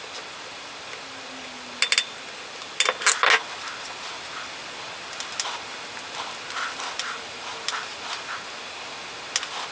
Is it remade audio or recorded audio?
recorded